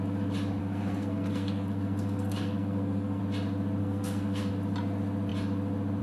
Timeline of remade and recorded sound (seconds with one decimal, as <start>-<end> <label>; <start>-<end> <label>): 0.0-0.6 recorded; 0.6-3.2 remade; 3.2-3.8 recorded; 3.8-4.5 remade; 4.5-6.0 recorded